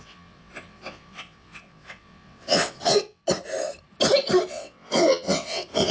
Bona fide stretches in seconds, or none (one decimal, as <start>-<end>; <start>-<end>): 3.2-4.5